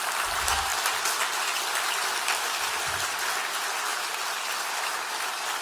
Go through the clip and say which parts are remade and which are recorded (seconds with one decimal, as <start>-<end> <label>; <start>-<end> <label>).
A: 0.0-3.9 recorded; 3.9-4.8 remade; 4.8-5.6 recorded